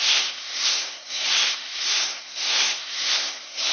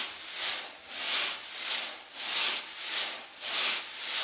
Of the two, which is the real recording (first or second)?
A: second